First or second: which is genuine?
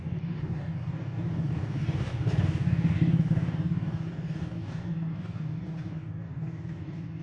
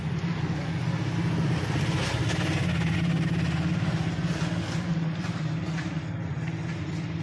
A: second